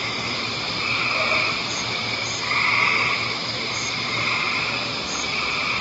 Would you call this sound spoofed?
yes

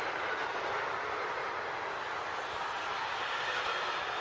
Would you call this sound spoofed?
no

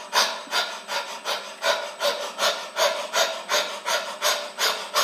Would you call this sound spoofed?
no